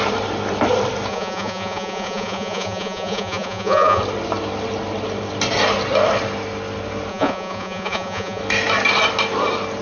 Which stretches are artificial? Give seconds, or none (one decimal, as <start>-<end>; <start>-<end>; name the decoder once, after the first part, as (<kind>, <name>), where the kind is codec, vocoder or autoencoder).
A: 1.1-4.0 (vocoder, Vocos); 7.1-8.4